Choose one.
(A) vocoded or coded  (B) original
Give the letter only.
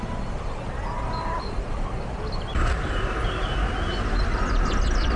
B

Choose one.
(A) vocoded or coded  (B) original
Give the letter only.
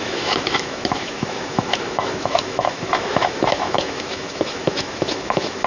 A